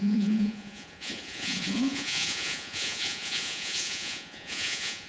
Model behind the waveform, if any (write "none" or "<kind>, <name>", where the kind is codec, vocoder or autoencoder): vocoder, Vocos